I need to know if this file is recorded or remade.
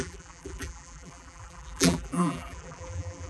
remade